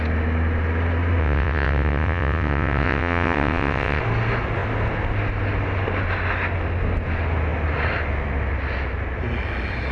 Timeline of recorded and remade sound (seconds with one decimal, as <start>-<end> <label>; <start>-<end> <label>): 0.0-1.2 recorded; 1.2-4.0 remade; 4.0-9.9 recorded